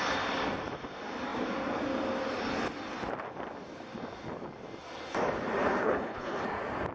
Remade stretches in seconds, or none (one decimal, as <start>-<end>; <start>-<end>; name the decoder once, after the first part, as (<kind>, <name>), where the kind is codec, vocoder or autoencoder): 5.8-6.4 (codec, HILCodec)